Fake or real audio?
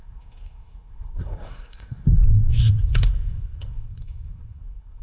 fake